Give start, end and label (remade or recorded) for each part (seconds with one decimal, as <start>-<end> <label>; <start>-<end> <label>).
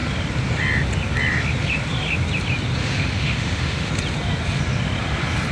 0.0-2.8 recorded; 2.8-3.9 remade; 3.9-5.5 recorded